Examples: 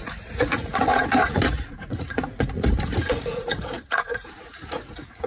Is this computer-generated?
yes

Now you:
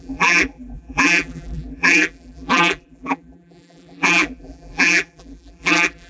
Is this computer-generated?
yes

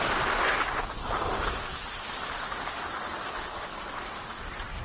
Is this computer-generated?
no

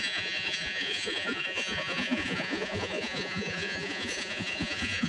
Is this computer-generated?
yes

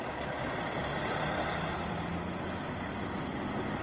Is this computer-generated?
no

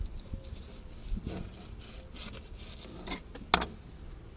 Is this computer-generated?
no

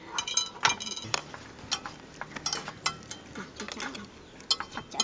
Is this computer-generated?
no